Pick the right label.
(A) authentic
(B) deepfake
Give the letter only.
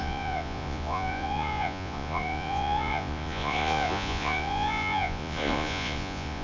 B